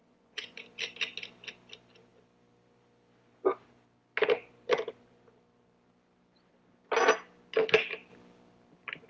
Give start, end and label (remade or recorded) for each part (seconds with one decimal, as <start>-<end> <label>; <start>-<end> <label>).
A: 0.0-0.6 remade; 0.6-9.1 recorded